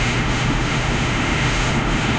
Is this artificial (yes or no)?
yes